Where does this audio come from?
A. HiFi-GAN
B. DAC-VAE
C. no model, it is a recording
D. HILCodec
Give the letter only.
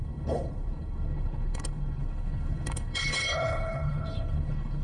D